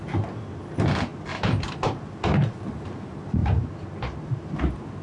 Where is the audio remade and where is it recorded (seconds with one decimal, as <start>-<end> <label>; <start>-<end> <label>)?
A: 0.0-1.1 recorded; 1.1-1.8 remade; 1.8-3.4 recorded; 3.4-4.5 remade; 4.5-5.0 recorded